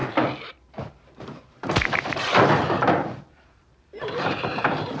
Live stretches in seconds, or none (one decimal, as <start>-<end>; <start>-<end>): 0.0-0.5